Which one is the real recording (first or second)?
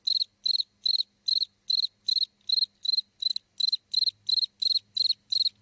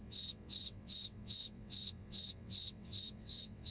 first